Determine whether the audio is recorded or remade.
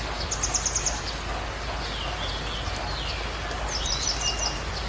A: recorded